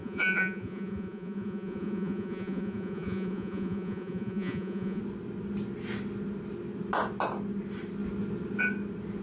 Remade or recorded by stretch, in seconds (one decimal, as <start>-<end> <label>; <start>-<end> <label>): 0.0-5.0 remade; 5.0-9.2 recorded